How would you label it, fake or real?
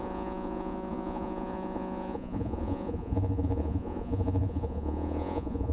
fake